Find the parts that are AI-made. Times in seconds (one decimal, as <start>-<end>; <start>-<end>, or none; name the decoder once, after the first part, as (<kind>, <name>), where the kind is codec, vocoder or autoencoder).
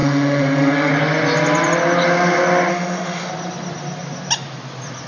0.0-0.9 (autoencoder, DAC-VAE); 2.7-3.3